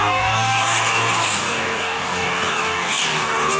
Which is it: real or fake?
fake